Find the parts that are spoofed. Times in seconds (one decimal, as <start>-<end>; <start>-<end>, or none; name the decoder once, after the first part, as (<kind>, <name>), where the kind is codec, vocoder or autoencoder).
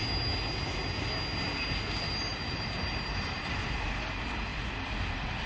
2.3-3.9 (vocoder, BigVGAN v2)